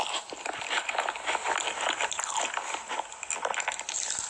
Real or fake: real